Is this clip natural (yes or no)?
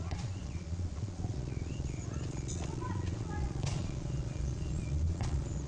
no